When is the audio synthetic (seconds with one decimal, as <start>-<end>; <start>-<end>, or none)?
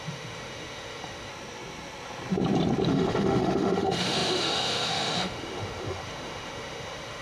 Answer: 0.0-1.3; 2.9-7.2